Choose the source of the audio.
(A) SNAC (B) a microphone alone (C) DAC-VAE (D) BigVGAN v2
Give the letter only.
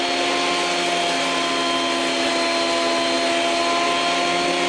B